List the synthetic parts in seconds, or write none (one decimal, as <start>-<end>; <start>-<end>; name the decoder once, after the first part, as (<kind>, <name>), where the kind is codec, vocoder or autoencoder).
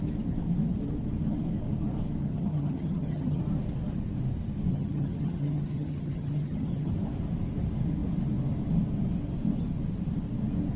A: 2.2-3.4 (vocoder, HiFi-GAN); 4.7-6.9